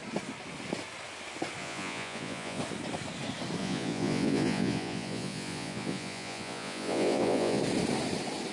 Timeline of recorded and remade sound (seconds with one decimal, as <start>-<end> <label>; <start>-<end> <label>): 0.0-1.6 recorded; 1.6-2.6 remade; 2.6-3.6 recorded; 3.6-7.6 remade; 7.6-8.5 recorded